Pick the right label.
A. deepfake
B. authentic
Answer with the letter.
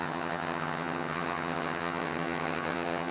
A